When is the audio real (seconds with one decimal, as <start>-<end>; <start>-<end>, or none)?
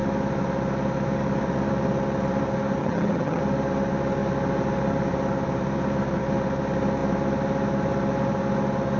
0.0-2.8; 3.4-9.0